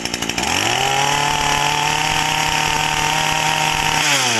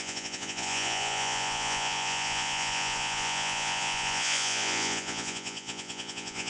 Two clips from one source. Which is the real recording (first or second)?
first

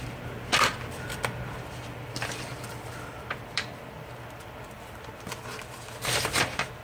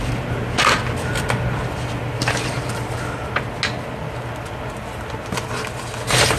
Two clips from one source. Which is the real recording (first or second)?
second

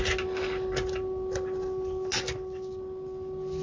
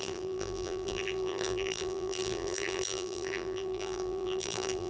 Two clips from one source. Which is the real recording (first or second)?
first